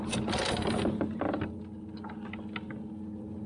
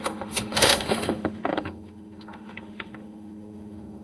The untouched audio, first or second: first